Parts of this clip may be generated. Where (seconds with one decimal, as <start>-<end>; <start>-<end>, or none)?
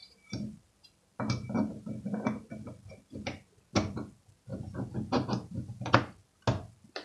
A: none